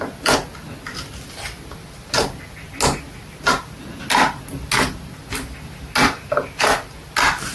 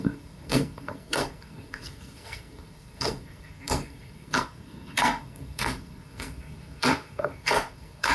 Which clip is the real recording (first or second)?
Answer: first